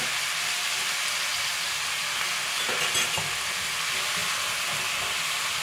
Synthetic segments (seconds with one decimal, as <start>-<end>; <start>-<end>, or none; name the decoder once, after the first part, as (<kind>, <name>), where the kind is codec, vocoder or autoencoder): 0.0-1.3 (vocoder, BigVGAN v2); 2.7-5.6